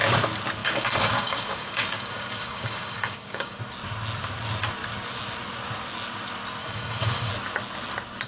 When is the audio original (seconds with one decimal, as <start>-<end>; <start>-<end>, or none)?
0.0-0.6; 3.6-6.6; 7.3-8.3